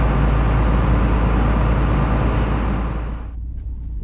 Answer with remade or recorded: recorded